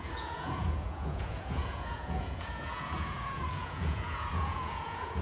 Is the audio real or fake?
fake